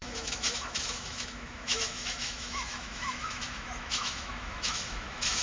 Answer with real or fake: fake